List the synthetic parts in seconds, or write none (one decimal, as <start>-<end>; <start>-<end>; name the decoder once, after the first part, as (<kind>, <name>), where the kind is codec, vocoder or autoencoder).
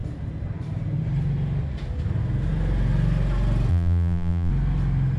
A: 3.7-4.5 (vocoder, BigVGAN v2)